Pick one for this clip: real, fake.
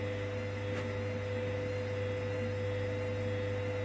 real